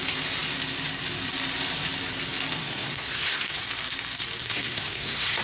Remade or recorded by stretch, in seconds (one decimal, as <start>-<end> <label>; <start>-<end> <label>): 0.0-2.6 recorded; 2.6-3.6 remade; 3.6-4.4 recorded; 4.4-5.4 remade